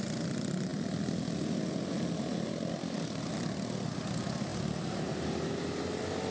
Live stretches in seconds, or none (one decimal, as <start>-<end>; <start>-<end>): 0.0-6.3